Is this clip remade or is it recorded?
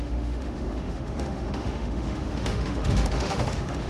remade